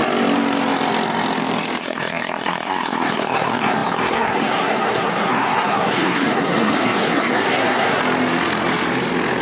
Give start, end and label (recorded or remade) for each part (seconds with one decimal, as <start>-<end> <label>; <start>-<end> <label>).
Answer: 0.0-1.8 recorded; 1.8-8.0 remade; 8.0-9.4 recorded